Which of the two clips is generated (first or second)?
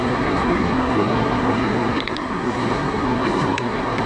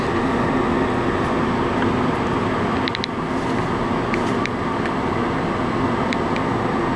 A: first